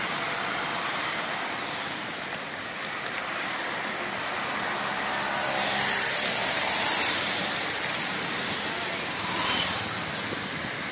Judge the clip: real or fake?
fake